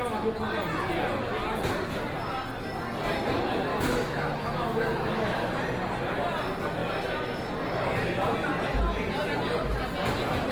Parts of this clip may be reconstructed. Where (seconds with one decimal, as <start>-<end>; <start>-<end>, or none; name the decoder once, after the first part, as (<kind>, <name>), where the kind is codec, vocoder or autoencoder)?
3.7-5.5 (autoencoder, DAC-VAE)